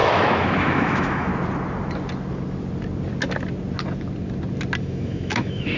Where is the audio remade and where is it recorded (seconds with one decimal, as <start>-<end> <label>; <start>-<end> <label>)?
0.0-1.3 remade; 1.3-4.8 recorded; 4.8-5.8 remade